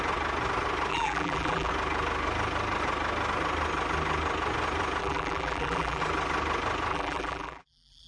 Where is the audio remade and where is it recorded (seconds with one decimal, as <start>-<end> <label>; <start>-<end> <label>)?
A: 0.0-0.9 recorded; 0.9-1.7 remade; 1.7-5.0 recorded; 5.0-6.0 remade; 6.0-6.9 recorded; 6.9-8.1 remade